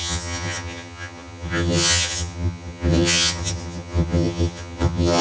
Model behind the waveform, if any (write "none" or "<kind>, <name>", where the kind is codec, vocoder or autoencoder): vocoder, HiFi-GAN